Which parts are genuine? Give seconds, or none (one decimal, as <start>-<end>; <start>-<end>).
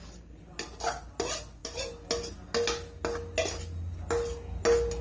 0.0-5.0